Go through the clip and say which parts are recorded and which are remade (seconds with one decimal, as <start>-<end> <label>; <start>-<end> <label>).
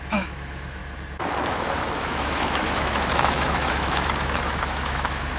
0.0-0.8 remade; 0.8-1.5 recorded; 1.5-5.4 remade